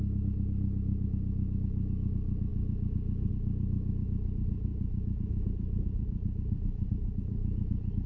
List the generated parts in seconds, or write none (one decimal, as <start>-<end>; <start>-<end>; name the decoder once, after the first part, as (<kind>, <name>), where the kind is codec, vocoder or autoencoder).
4.7-8.1 (vocoder, BigVGAN v2)